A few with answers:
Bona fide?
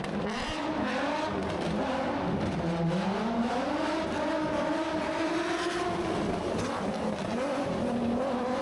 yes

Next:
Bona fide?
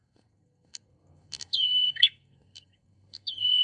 no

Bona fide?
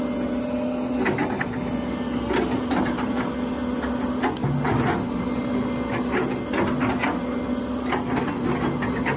yes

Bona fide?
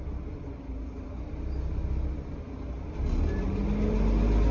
yes